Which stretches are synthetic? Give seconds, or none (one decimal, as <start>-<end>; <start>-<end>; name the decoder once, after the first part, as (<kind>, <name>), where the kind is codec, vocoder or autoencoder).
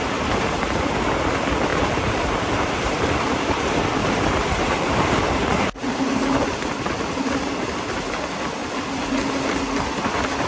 1.7-3.2 (vocoder, BigVGAN v2); 4.0-5.1